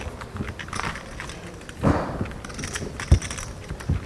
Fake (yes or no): no